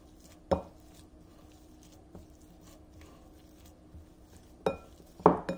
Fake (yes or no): no